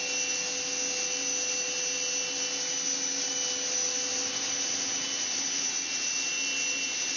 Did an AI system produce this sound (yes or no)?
no